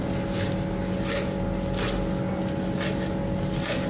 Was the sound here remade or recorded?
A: recorded